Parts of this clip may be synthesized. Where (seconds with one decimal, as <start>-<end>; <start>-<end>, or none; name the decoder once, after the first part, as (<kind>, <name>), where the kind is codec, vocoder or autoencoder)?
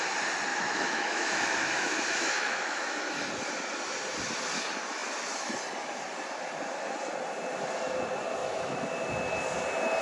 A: 0.5-3.2 (autoencoder, DAC-VAE); 8.4-8.9